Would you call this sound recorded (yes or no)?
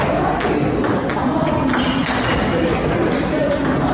yes